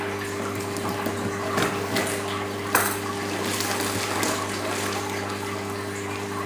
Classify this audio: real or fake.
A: real